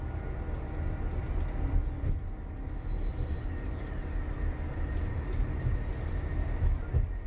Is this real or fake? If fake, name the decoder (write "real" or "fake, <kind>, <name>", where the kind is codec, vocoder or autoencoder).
real